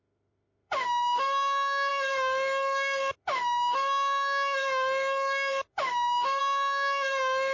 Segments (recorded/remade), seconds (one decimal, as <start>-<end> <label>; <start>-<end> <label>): 0.0-7.5 remade